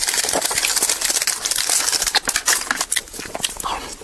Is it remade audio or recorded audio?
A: recorded